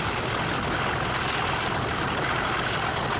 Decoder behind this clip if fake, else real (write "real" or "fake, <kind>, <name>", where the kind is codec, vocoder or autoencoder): real